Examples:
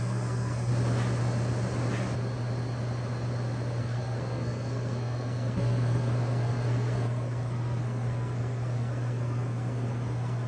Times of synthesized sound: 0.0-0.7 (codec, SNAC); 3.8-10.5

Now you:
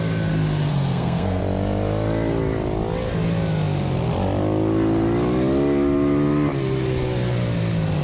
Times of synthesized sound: 0.7-1.4 (codec, SNAC)

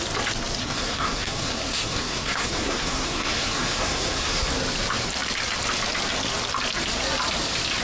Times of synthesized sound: 0.6-4.5 (codec, SNAC)

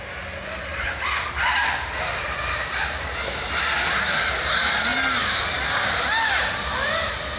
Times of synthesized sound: none